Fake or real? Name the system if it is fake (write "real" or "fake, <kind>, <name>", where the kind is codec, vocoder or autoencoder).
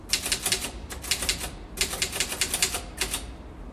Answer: real